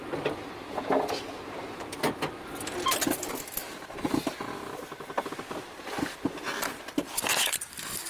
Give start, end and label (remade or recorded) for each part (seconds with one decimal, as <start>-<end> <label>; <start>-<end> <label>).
0.0-8.1 recorded